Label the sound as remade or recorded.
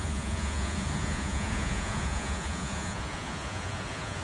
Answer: remade